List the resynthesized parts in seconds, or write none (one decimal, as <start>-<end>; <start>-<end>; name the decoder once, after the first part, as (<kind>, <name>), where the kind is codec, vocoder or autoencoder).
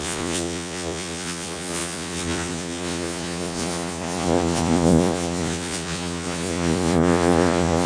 0.0-7.9 (vocoder, Vocos)